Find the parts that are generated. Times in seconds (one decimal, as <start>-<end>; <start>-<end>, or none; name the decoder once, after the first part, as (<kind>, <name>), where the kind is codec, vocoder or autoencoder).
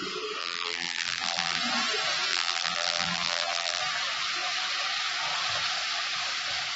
0.4-1.6 (vocoder, BigVGAN v2); 2.3-3.8